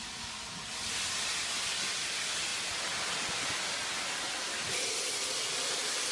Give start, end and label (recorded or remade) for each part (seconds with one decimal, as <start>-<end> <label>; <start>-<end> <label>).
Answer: 0.0-6.1 recorded